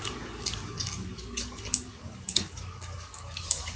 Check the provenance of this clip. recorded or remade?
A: remade